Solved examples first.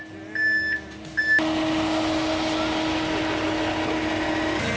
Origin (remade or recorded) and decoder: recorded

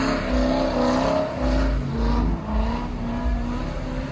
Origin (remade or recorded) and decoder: recorded